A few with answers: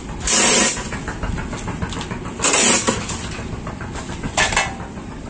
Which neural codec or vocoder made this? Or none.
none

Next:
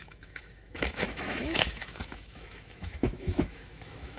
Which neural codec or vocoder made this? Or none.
autoencoder, DAC-VAE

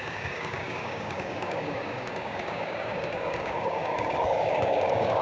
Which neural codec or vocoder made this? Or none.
codec, DAC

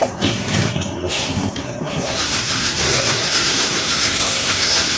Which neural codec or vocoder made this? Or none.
codec, SNAC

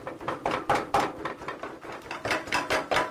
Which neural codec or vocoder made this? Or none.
none